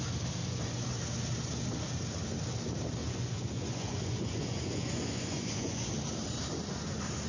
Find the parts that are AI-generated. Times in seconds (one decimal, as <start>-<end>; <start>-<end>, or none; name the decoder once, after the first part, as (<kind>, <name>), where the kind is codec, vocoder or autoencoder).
0.4-0.9 (vocoder, Vocos); 3.0-5.9